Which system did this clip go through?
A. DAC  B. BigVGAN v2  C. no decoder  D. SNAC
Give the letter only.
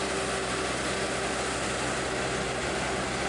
C